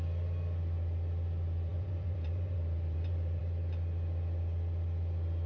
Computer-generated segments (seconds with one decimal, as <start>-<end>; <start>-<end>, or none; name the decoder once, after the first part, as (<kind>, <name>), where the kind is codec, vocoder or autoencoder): 1.7-3.4 (vocoder, BigVGAN v2)